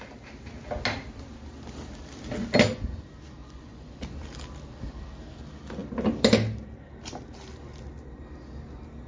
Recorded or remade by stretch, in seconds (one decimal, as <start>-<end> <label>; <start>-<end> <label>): 0.0-3.4 recorded; 3.4-3.9 remade; 3.9-9.1 recorded